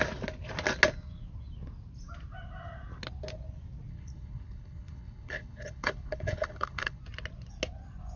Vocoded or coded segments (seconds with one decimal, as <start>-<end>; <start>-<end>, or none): 3.9-7.0